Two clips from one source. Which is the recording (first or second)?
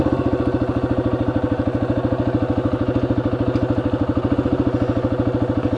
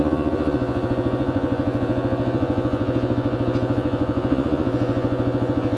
first